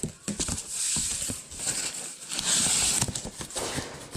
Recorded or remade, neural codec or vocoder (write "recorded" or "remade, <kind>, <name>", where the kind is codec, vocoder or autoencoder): recorded